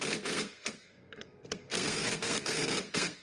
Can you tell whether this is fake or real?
fake